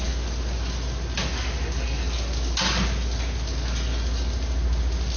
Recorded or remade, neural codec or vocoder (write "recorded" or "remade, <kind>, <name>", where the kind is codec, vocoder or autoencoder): recorded